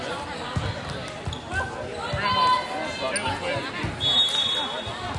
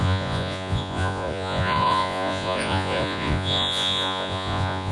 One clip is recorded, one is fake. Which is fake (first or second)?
second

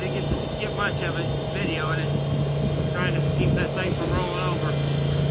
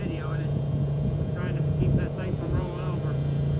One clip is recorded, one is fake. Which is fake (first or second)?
second